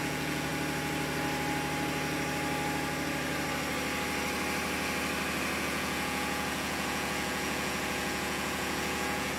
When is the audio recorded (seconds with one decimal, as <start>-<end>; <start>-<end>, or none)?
0.5-5.6